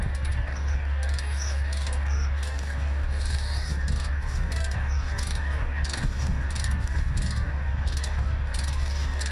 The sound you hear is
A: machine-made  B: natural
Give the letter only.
A